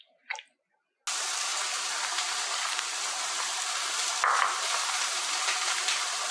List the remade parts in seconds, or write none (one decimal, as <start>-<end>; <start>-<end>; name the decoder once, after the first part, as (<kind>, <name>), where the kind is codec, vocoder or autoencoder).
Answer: none

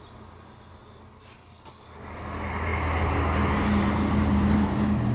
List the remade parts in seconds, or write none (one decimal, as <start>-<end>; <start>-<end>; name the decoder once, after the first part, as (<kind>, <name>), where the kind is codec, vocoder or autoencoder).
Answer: none

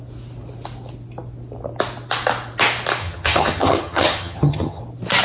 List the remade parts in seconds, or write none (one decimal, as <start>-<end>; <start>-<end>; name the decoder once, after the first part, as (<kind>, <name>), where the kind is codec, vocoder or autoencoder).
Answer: 3.0-4.8 (vocoder, HiFi-GAN)

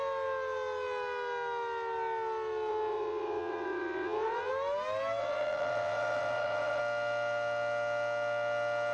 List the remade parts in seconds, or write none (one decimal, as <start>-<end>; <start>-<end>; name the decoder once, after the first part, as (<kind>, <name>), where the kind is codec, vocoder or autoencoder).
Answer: 2.7-4.5 (vocoder, WaveNeXt); 5.2-6.8